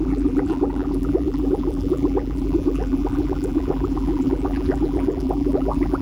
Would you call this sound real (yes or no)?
no